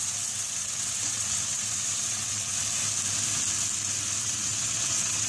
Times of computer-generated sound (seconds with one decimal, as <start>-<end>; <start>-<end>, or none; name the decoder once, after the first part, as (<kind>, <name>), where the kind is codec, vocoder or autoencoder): 0.0-2.5 (vocoder, WaveNeXt); 4.2-5.3